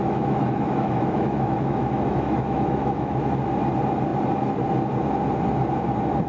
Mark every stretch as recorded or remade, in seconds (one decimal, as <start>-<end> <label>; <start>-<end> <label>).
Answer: 0.0-3.2 remade; 3.2-6.3 recorded